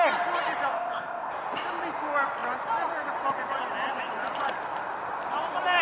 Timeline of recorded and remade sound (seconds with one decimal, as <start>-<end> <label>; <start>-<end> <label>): 0.0-0.7 recorded; 0.7-1.3 remade; 1.3-5.8 recorded